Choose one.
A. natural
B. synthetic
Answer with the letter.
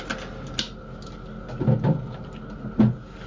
A